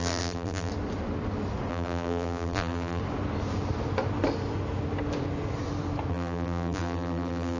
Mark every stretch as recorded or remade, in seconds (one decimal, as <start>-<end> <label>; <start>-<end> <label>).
0.0-0.7 remade; 0.7-1.7 recorded; 1.7-3.0 remade; 3.0-6.1 recorded; 6.1-7.6 remade